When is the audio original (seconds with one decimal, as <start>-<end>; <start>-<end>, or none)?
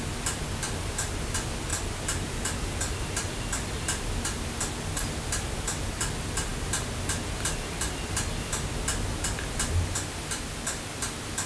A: 0.0-11.5